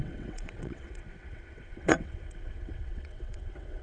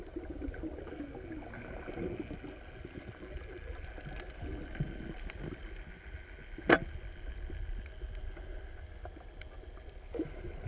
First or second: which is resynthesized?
first